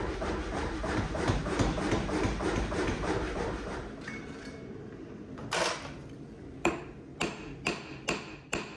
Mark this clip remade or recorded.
remade